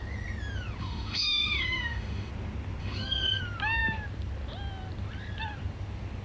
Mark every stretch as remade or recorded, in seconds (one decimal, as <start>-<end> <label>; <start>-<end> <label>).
0.0-0.8 recorded; 0.8-2.3 remade; 2.3-2.8 recorded; 2.8-3.4 remade; 3.4-6.2 recorded